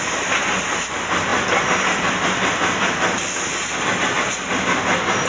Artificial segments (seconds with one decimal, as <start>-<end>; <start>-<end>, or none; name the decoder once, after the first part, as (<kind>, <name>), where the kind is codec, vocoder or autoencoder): none